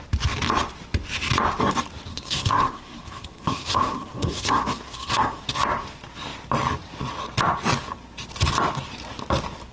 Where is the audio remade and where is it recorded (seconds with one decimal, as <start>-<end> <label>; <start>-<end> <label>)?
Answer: 0.0-2.1 recorded; 2.1-5.4 remade; 5.4-9.7 recorded